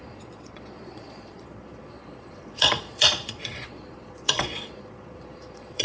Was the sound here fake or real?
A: fake